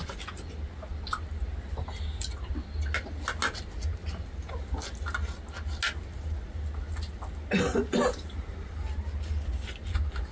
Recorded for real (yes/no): yes